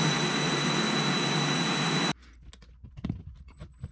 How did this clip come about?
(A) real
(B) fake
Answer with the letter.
A